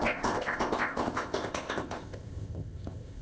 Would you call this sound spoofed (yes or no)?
yes